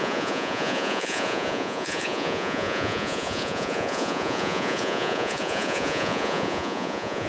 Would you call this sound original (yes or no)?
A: no